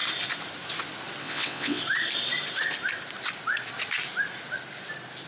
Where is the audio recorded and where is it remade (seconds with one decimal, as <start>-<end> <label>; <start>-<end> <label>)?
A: 0.0-1.2 recorded; 1.2-1.8 remade; 1.8-5.3 recorded